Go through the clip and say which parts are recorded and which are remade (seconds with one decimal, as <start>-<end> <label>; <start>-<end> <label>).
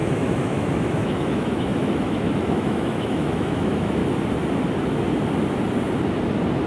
0.0-4.0 remade; 4.0-6.7 recorded